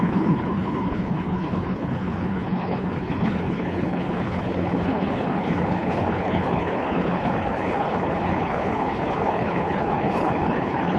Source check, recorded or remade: remade